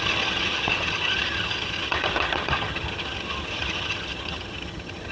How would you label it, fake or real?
fake